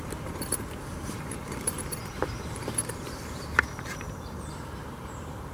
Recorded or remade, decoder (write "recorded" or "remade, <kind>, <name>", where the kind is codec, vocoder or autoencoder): remade, vocoder, BigVGAN v2